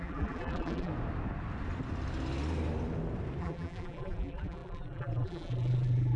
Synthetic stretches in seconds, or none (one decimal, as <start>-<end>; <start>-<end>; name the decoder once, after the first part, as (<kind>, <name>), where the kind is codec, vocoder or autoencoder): 0.0-0.9 (vocoder, BigVGAN v2); 3.4-6.2